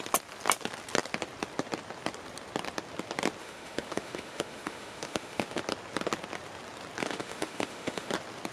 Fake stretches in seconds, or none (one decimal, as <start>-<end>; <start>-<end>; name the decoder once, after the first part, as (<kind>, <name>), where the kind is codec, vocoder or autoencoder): 3.4-5.6 (autoencoder, DAC-VAE); 7.0-8.1